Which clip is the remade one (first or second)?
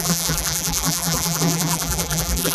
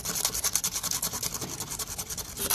first